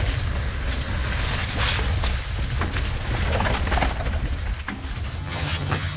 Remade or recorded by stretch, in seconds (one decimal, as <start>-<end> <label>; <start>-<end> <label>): 0.0-5.2 recorded; 5.2-6.0 remade